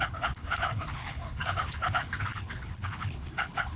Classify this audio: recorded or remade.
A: remade